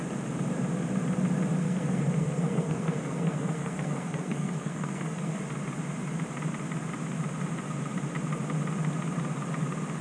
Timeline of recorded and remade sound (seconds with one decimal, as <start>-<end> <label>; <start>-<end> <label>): 0.0-1.6 recorded; 1.6-5.4 remade; 5.4-10.0 recorded